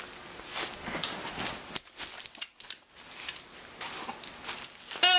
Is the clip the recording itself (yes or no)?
yes